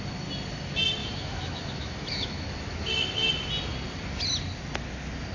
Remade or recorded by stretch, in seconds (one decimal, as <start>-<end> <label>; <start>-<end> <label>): 0.0-1.0 recorded; 1.0-2.9 remade; 2.9-5.3 recorded